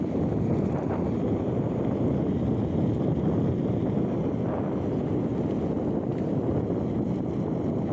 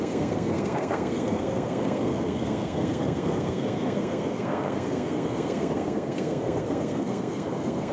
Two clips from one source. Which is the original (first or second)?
first